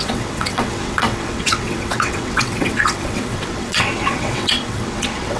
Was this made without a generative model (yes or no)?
no